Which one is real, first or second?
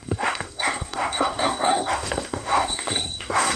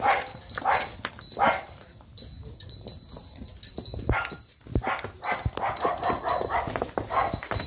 second